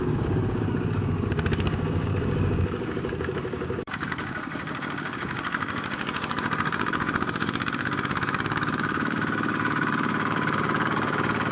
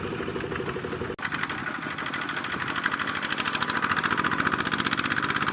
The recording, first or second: second